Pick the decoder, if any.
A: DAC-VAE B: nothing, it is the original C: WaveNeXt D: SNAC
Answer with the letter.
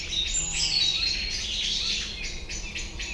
B